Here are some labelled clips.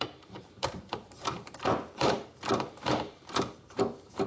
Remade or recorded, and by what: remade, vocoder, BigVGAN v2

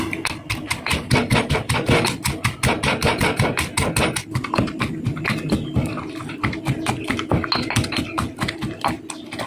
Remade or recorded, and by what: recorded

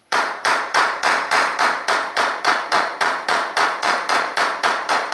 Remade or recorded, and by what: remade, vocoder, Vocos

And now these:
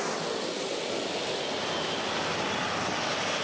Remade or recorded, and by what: recorded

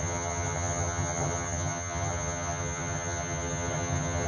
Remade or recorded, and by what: remade, vocoder, HiFi-GAN